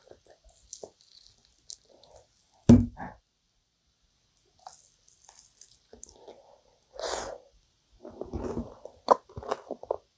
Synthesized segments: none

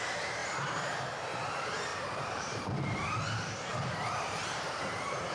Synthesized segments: 0.0-5.3 (vocoder, BigVGAN v2)

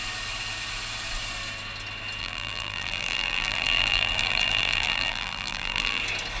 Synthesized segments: 2.2-6.0 (vocoder, BigVGAN v2)

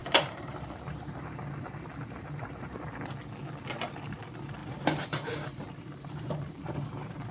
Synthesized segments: 0.0-3.1 (vocoder, BigVGAN v2); 4.6-7.3

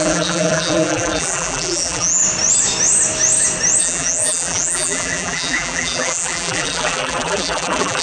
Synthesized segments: 0.0-2.2 (vocoder, BigVGAN v2); 3.8-8.0

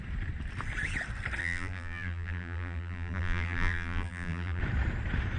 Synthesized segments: 1.4-4.6 (vocoder, BigVGAN v2)